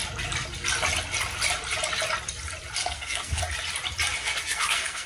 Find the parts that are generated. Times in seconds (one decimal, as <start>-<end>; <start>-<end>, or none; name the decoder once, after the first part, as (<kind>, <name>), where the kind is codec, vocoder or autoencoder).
2.8-3.4 (codec, SNAC); 4.2-5.1